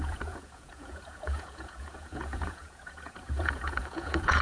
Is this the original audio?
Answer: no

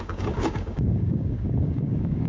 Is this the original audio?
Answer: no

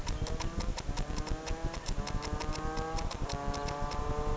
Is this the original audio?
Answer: yes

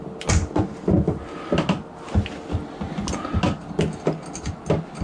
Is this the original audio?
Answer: yes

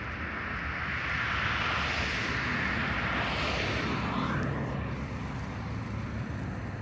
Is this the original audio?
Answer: yes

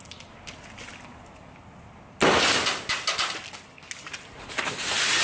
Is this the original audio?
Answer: yes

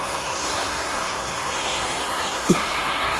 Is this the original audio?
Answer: no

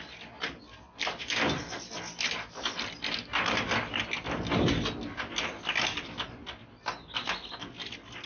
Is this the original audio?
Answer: yes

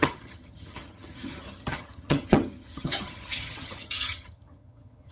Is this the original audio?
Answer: no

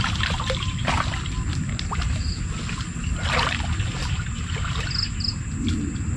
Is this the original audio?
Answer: yes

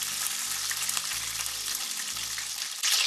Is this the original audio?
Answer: yes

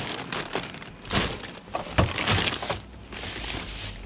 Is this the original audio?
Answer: yes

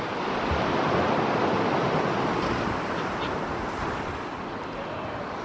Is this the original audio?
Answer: yes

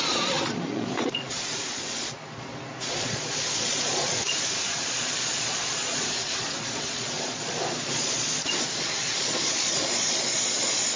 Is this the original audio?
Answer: no